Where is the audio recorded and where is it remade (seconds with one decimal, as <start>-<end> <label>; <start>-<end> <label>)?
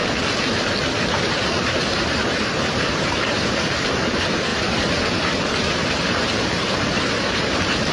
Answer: 0.0-1.0 recorded; 1.0-7.9 remade